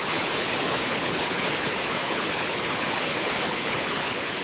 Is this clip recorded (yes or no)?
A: no